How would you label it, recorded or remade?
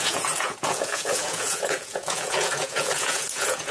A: remade